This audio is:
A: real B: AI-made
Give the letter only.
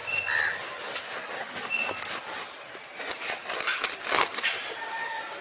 A